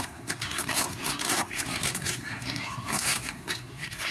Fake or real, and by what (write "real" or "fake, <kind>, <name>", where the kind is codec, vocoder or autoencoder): fake, codec, SNAC